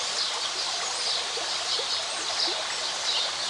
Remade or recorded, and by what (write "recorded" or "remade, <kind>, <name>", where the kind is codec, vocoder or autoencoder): recorded